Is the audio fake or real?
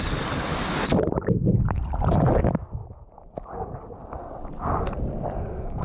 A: real